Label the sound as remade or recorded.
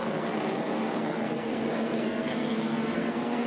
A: remade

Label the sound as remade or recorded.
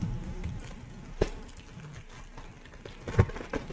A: recorded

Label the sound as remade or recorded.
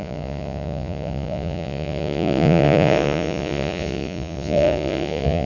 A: remade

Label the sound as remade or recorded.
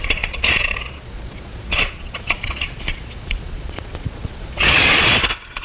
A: remade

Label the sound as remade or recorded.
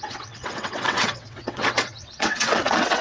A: remade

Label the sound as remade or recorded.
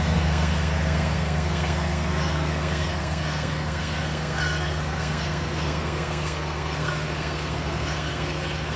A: remade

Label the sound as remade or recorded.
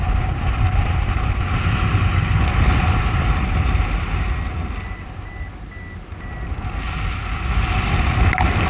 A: recorded